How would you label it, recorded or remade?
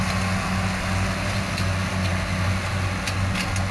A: recorded